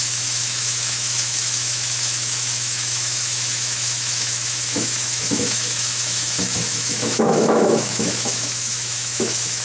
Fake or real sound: fake